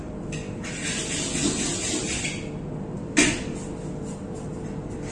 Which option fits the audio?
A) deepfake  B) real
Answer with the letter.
B